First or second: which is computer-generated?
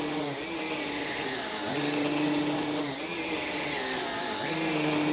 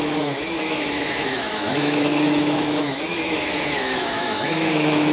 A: second